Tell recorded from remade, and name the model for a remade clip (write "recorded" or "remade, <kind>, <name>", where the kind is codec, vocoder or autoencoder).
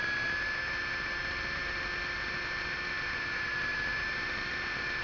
recorded